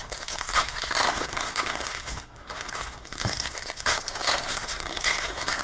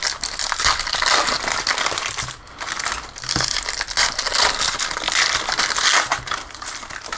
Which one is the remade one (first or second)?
first